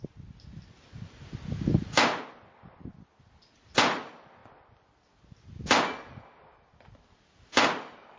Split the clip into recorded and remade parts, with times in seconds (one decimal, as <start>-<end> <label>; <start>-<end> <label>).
0.0-8.2 recorded